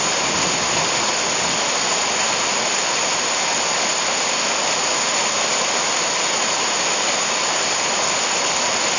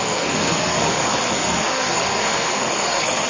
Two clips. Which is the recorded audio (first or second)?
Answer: first